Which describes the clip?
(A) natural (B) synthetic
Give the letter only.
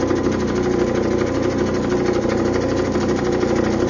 A